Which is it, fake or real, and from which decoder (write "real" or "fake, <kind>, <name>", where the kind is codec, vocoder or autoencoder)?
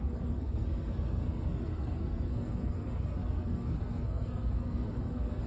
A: fake, codec, SNAC